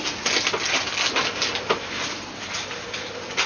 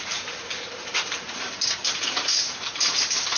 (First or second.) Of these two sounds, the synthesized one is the second